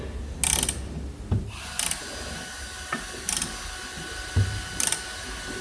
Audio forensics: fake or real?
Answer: real